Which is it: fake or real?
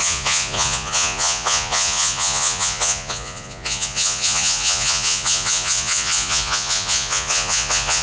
fake